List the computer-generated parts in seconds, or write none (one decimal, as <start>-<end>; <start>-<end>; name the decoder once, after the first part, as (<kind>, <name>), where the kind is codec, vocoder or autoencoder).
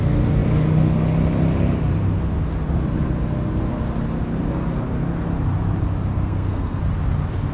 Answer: 6.1-6.8 (codec, SNAC)